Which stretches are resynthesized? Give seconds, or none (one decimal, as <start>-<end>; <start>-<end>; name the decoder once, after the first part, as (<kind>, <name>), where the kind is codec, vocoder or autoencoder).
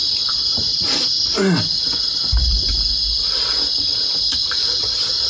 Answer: none